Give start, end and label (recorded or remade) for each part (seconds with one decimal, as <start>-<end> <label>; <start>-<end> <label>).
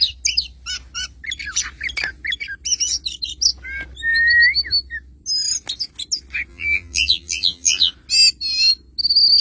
0.0-6.5 recorded; 6.5-7.9 remade; 7.9-9.4 recorded